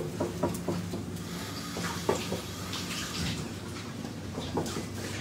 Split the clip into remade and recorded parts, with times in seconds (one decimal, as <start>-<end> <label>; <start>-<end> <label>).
0.0-2.0 recorded; 2.0-5.2 remade